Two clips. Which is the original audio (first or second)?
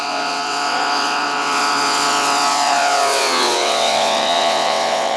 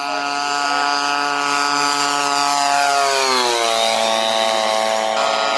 second